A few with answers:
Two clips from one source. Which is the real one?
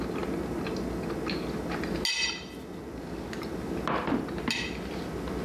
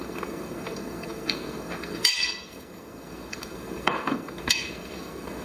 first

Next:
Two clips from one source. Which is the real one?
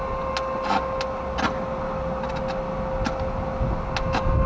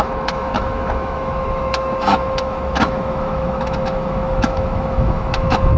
first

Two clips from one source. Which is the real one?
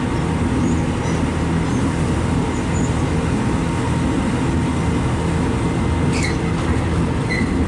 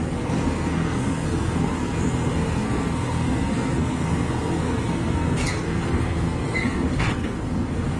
first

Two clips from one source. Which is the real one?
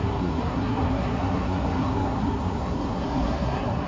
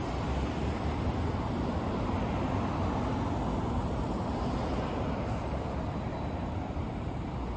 second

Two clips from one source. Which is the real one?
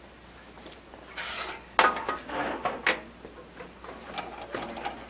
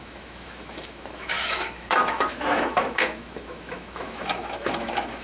first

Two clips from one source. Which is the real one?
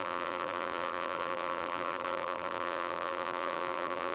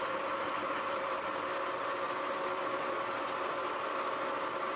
second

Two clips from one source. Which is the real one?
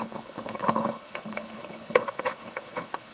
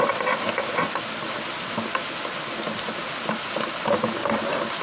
second